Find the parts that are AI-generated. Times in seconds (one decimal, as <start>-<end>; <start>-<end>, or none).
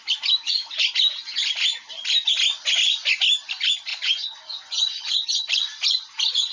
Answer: 3.9-5.4